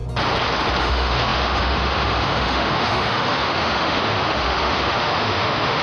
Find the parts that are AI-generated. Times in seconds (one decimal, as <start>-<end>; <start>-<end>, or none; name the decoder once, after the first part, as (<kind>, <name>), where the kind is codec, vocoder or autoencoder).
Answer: 0.8-5.8 (autoencoder, DAC-VAE)